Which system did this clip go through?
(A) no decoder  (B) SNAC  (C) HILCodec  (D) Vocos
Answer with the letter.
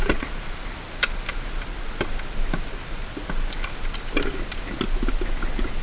A